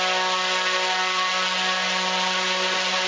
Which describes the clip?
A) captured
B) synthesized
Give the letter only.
A